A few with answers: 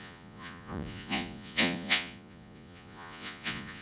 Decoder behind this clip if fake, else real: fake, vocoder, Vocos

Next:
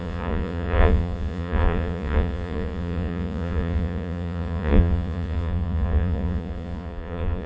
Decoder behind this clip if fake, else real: fake, vocoder, Vocos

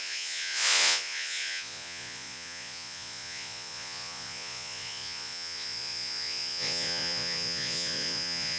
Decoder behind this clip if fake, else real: fake, vocoder, Vocos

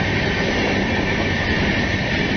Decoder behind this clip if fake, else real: real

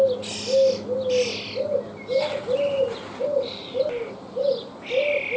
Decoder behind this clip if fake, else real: real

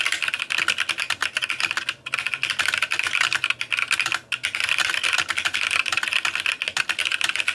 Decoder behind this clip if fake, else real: real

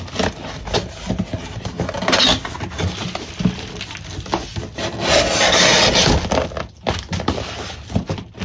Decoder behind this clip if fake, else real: real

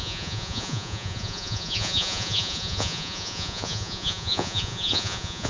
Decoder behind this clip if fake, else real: fake, vocoder, Vocos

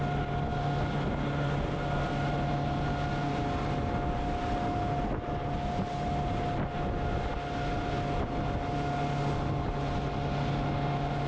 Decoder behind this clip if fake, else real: real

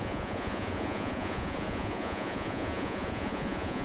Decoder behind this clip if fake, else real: fake, vocoder, Vocos